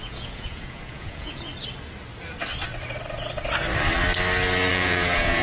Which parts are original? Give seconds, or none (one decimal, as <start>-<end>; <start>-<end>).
1.5-4.7